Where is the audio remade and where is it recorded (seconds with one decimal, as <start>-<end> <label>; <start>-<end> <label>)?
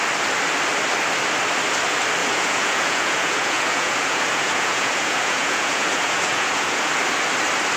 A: 0.0-2.2 recorded; 2.2-6.9 remade; 6.9-7.8 recorded